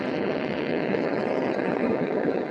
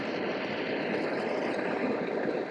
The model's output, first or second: first